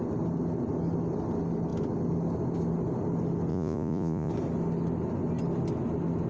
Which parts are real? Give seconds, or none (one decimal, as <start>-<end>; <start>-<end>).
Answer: 0.0-3.5; 4.3-6.3